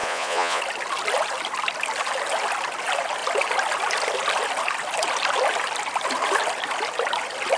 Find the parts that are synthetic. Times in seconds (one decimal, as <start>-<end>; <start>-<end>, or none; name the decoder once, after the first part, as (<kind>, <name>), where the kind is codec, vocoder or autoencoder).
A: 0.0-0.6 (vocoder, Vocos)